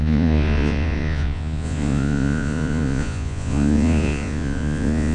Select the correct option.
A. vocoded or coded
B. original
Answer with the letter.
A